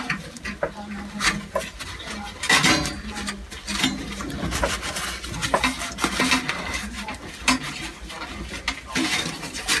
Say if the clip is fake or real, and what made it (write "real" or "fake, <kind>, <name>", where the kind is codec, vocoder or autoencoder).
real